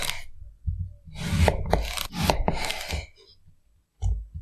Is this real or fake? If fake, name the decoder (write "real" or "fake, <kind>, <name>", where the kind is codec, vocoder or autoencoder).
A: real